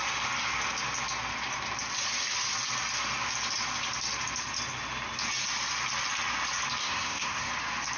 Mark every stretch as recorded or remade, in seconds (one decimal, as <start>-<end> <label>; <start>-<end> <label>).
0.0-6.8 recorded; 6.8-7.5 remade; 7.5-8.0 recorded